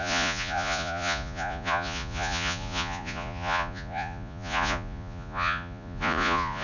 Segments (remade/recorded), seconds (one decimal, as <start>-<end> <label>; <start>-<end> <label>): 0.0-6.6 remade